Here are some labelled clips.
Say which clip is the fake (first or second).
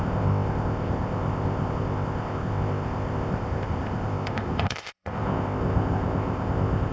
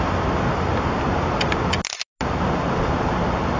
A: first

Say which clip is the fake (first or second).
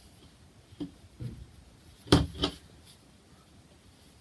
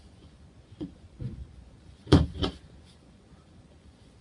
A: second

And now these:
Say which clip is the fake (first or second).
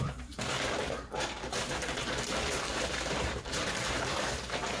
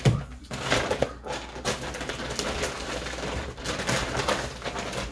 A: first